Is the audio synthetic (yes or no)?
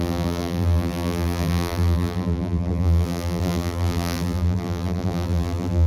yes